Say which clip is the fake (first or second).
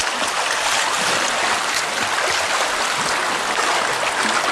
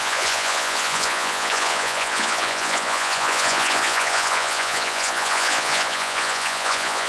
second